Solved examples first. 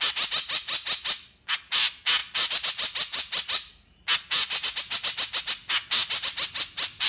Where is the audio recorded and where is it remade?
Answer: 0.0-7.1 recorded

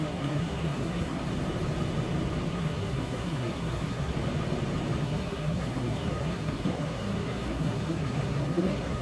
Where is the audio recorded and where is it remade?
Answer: 0.0-1.2 remade; 1.2-2.5 recorded; 2.5-4.1 remade; 4.1-5.0 recorded; 5.0-9.0 remade

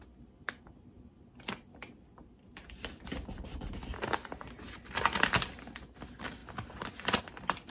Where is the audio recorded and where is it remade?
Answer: 0.0-7.7 recorded

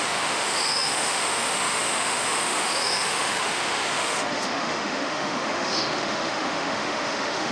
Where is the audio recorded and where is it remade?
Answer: 0.0-7.5 remade

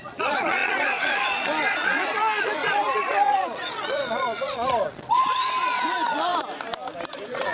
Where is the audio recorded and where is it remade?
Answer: 0.0-6.3 remade; 6.3-7.1 recorded; 7.1-7.5 remade

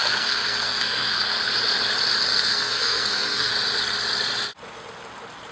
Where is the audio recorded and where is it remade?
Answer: 0.0-1.3 remade; 1.3-2.3 recorded; 2.3-3.5 remade; 3.5-5.5 recorded